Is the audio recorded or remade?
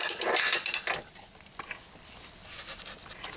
recorded